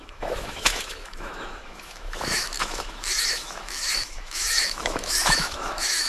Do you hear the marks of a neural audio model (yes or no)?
yes